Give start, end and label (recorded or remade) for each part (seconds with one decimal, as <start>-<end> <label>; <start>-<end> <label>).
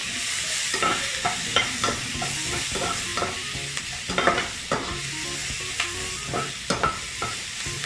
0.0-2.1 remade; 2.1-3.1 recorded; 3.1-3.8 remade; 3.8-7.9 recorded